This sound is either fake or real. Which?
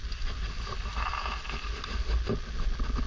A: real